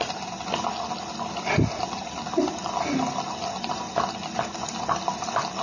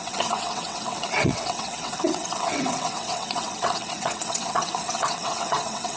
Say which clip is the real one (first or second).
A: first